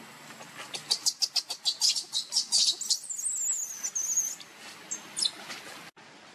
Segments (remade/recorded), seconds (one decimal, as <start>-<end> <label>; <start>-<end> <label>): 0.0-6.3 recorded